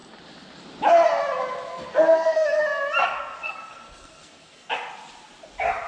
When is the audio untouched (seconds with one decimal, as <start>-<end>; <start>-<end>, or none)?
0.0-1.7; 2.6-3.0; 4.7-5.9